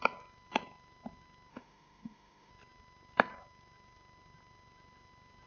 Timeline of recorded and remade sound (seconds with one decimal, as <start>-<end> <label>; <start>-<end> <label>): 0.0-1.5 recorded; 1.5-2.5 remade; 2.5-5.5 recorded